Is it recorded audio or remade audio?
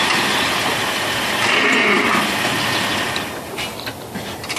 recorded